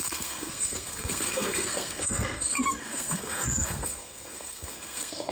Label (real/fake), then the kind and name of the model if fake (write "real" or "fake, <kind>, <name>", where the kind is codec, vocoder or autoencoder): fake, codec, SNAC